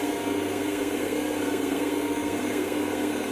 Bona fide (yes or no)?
no